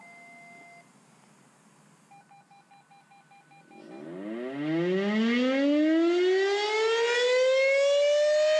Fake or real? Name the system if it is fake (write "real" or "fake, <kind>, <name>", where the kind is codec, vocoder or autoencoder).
real